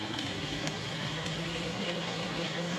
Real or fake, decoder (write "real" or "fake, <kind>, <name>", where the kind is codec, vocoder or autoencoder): fake, codec, SNAC